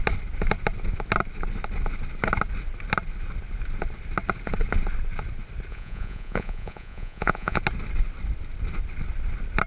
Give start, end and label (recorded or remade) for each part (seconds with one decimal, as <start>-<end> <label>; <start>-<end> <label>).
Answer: 0.0-5.7 recorded; 5.7-7.6 remade; 7.6-9.7 recorded